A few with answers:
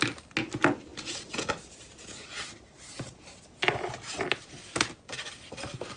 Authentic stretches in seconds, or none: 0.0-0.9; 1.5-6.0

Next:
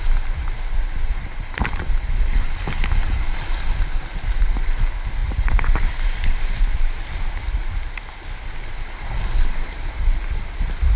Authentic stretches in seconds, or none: 0.0-11.0

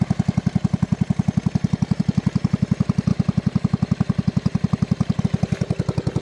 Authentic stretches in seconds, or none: 0.0-6.2

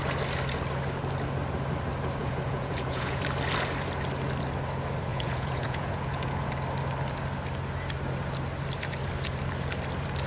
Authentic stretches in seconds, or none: 0.0-2.2; 3.2-5.1; 6.3-10.3

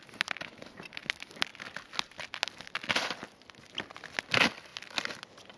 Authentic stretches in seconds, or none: 0.0-5.6

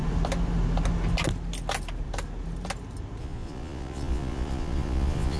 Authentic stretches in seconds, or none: 0.0-3.2

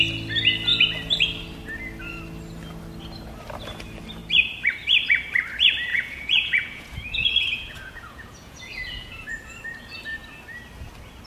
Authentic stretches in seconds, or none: 0.0-5.9; 9.3-11.3